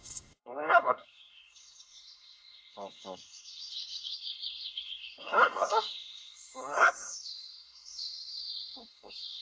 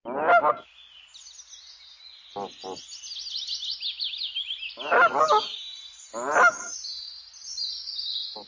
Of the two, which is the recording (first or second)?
second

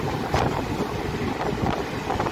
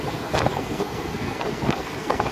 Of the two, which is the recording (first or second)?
first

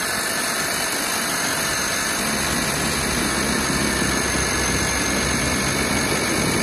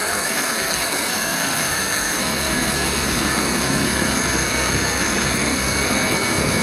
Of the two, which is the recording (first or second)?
first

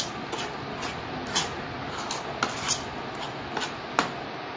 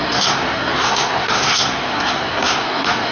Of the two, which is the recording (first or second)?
first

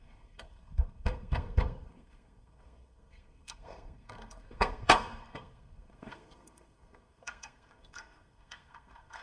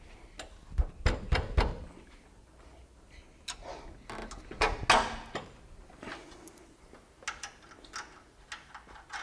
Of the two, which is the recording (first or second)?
second